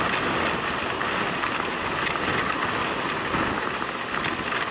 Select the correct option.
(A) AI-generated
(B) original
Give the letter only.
B